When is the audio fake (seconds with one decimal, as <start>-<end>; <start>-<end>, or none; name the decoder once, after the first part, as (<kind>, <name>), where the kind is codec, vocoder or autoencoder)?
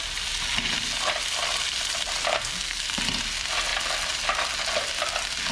2.3-3.0 (codec, SNAC)